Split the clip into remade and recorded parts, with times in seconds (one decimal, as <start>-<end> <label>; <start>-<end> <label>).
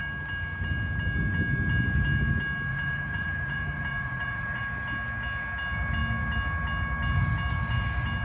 0.0-2.7 recorded; 2.7-4.6 remade; 4.6-8.2 recorded